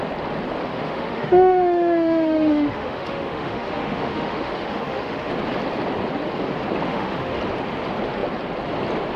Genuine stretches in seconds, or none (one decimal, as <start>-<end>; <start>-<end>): 0.0-0.7; 5.3-6.9; 7.4-9.2